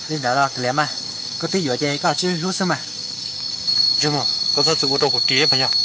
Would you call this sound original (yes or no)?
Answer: no